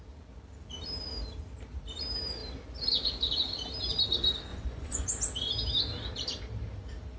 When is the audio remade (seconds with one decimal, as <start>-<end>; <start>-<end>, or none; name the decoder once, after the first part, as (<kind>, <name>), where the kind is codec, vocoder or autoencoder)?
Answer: 4.5-5.1 (vocoder, Vocos)